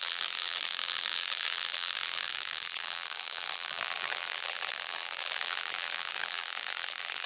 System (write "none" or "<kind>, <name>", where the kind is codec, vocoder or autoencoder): vocoder, BigVGAN v2